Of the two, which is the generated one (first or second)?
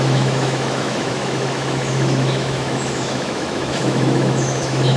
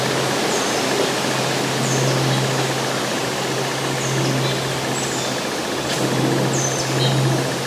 first